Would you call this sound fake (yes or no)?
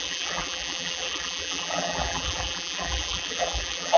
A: yes